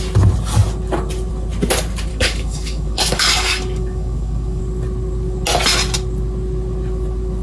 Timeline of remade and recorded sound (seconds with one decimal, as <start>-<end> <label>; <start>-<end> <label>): 0.0-2.1 recorded; 2.1-4.6 remade; 4.6-7.4 recorded